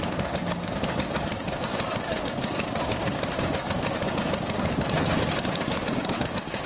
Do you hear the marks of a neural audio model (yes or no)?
yes